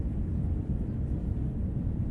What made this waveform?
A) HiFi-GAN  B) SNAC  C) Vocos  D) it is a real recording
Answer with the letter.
D